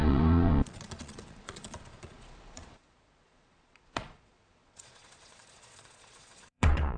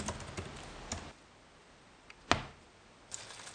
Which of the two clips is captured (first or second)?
second